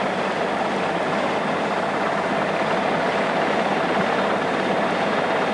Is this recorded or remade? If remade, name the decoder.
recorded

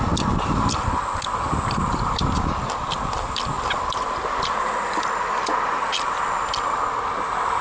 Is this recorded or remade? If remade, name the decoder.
recorded